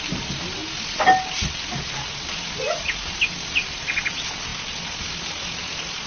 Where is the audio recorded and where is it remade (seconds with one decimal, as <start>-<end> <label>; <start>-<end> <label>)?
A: 0.0-6.1 recorded